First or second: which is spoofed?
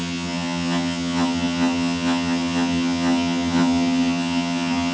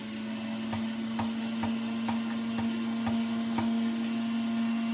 first